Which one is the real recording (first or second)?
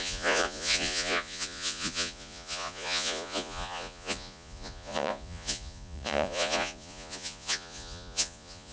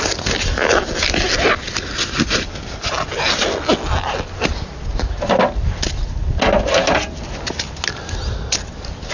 second